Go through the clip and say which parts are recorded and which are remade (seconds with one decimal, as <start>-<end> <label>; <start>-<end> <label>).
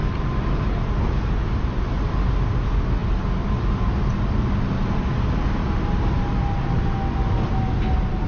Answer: 0.0-8.3 recorded